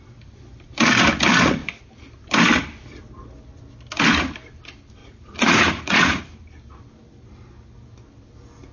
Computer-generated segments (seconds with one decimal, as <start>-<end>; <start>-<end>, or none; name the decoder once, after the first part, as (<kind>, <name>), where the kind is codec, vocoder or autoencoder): 5.0-6.2 (vocoder, Vocos)

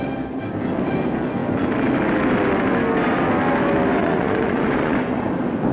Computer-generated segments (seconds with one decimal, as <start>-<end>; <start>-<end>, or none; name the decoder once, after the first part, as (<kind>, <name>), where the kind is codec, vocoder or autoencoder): 4.0-5.3 (vocoder, Vocos)

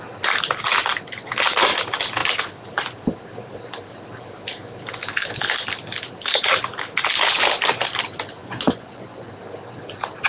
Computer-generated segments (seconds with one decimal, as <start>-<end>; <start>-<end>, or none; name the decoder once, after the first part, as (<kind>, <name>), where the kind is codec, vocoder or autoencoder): 8.4-9.3 (vocoder, Vocos)

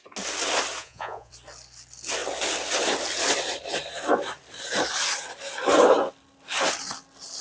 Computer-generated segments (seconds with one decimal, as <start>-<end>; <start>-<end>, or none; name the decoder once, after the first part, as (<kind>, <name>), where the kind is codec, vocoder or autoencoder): 0.8-1.3 (vocoder, Vocos)

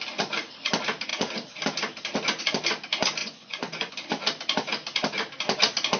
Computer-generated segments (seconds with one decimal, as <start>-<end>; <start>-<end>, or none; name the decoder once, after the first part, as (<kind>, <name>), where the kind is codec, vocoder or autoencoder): 3.2-3.9 (vocoder, Vocos)

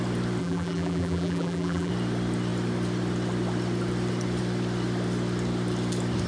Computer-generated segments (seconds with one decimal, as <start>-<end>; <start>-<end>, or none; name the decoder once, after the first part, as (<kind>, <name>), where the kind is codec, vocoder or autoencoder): 0.4-1.9 (vocoder, BigVGAN v2)

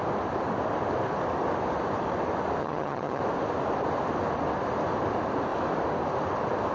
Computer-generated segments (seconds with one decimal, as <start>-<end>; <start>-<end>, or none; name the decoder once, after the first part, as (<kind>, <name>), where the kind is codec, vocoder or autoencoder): 2.6-3.2 (vocoder, HiFi-GAN)

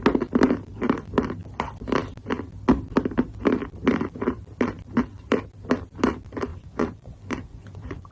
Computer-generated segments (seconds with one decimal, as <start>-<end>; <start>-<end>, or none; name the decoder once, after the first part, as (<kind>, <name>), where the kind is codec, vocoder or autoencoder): 6.5-8.1 (vocoder, Vocos)